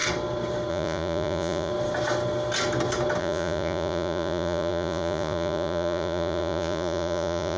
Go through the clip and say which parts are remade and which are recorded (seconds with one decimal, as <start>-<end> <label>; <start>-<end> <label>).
0.0-0.7 recorded; 0.7-1.7 remade; 1.7-3.2 recorded; 3.2-7.6 remade